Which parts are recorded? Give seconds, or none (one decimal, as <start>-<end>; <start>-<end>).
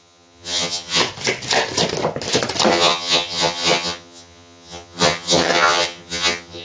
1.0-2.7